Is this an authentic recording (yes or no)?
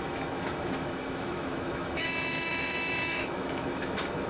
no